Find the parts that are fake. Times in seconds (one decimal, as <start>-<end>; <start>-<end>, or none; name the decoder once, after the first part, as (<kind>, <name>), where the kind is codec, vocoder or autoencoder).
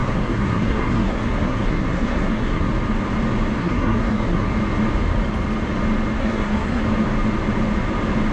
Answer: 0.0-2.7 (codec, SNAC); 3.6-4.5; 6.2-6.8